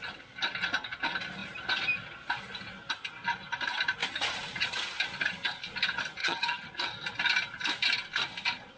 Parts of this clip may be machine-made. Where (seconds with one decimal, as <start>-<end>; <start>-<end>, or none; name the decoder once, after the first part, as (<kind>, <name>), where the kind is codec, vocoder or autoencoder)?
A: 6.2-6.7 (vocoder, HiFi-GAN)